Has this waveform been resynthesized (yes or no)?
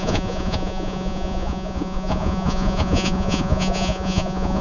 yes